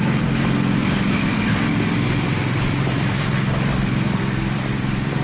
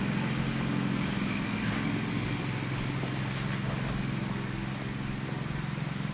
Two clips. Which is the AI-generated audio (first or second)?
first